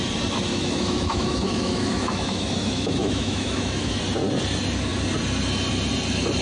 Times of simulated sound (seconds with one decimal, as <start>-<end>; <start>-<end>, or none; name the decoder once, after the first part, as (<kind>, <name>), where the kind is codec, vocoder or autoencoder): 0.5-4.0 (autoencoder, DAC-VAE)

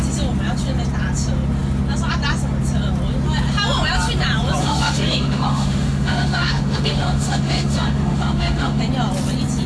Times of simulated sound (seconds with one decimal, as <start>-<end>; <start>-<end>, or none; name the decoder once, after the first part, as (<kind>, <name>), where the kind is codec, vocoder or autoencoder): 4.6-8.8 (autoencoder, DAC-VAE)